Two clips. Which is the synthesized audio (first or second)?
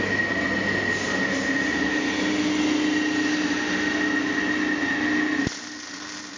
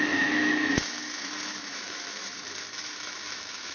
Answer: second